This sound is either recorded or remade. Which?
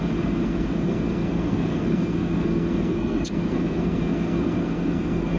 remade